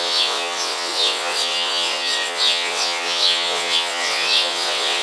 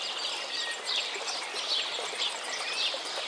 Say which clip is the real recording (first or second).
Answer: second